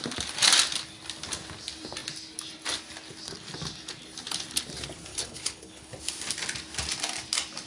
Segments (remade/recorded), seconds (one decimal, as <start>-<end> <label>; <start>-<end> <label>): 0.0-5.1 recorded; 5.1-6.0 remade; 6.0-7.7 recorded